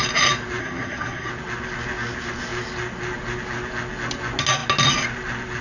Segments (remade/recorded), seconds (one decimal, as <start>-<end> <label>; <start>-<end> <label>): 0.0-0.6 recorded; 0.6-1.3 remade; 1.3-5.6 recorded